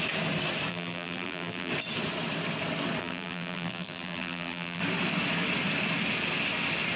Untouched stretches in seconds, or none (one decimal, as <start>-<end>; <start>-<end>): 0.0-0.7; 1.7-3.0; 4.8-7.0